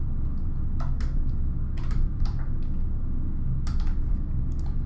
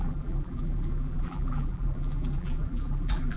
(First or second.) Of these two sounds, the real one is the first